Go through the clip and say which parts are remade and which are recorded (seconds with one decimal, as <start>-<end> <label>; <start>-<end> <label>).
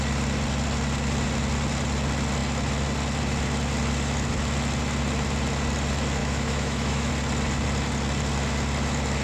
0.0-6.2 recorded; 6.2-7.1 remade; 7.1-9.2 recorded